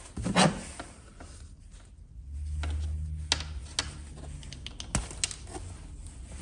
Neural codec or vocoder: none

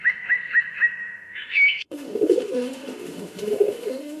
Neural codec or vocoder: autoencoder, DAC-VAE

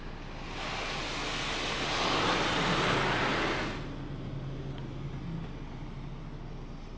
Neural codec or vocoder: none